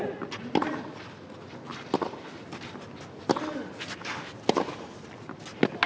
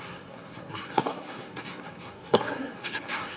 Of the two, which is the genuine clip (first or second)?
first